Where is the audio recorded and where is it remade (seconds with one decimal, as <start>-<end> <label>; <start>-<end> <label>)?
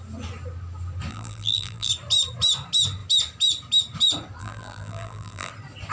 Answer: 0.0-1.1 recorded; 1.1-1.9 remade; 1.9-4.4 recorded; 4.4-5.5 remade; 5.5-5.9 recorded